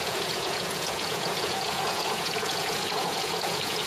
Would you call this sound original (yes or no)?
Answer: no